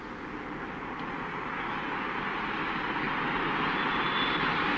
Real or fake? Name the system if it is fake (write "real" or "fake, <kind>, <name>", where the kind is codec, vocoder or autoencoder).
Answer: real